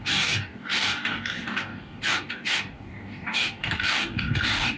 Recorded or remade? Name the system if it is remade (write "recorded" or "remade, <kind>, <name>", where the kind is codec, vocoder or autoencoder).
remade, codec, DAC